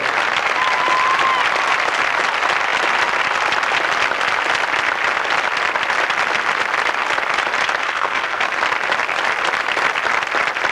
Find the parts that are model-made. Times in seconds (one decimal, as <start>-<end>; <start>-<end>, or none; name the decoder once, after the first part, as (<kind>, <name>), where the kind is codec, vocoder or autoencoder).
7.8-8.5 (codec, SNAC)